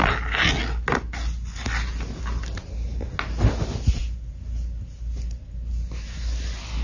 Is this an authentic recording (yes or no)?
yes